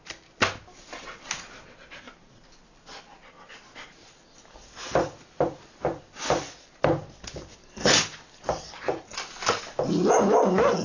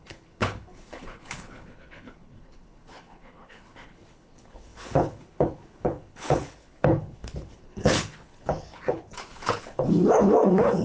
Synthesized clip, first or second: second